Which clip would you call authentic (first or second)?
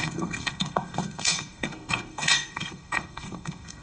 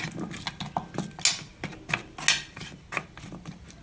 second